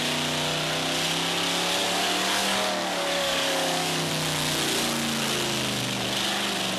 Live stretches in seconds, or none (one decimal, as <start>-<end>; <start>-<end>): 0.0-1.8; 4.1-6.8